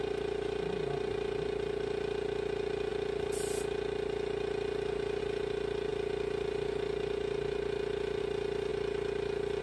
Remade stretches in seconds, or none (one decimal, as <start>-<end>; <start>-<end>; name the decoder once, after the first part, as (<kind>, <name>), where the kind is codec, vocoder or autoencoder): none